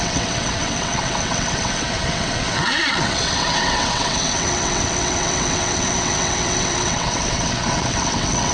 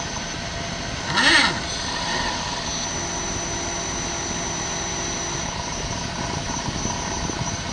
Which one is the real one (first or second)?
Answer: second